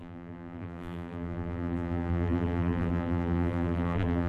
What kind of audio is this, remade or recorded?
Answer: remade